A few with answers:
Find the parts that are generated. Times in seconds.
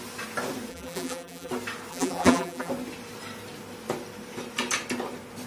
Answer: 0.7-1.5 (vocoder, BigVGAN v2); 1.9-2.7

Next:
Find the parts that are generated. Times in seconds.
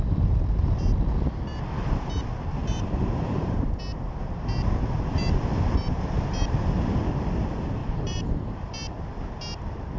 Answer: 2.6-3.8 (vocoder, BigVGAN v2); 7.8-8.7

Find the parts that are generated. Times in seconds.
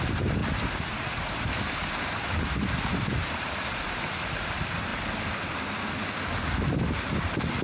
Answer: 0.4-4.1 (vocoder, BigVGAN v2)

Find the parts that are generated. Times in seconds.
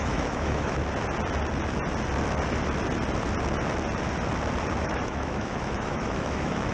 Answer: 0.0-0.8 (autoencoder, DAC-VAE); 4.8-6.7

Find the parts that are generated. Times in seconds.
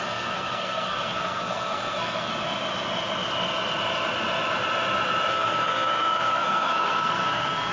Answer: 0.0-2.3 (codec, SNAC); 5.3-7.7